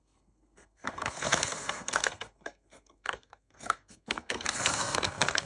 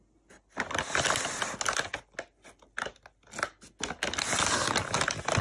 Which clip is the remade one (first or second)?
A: first